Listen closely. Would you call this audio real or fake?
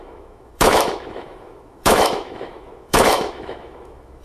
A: fake